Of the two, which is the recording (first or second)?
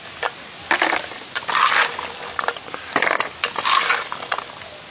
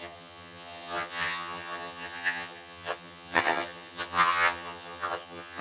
first